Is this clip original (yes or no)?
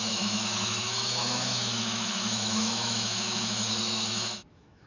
no